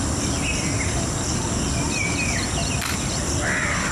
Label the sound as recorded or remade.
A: remade